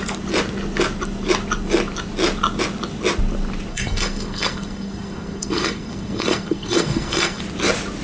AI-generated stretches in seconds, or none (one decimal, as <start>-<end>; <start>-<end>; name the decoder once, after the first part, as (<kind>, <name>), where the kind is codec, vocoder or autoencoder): 3.7-7.4 (codec, SNAC)